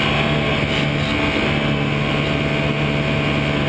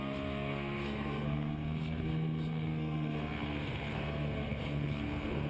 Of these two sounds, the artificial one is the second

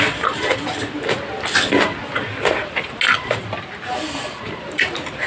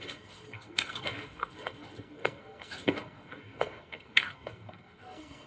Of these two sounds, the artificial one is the second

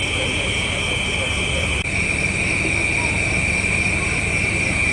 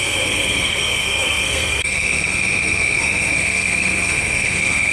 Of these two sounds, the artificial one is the second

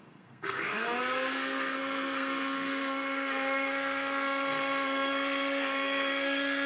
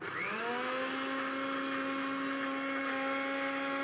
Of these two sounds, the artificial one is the first